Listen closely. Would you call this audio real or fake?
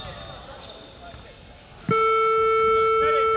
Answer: real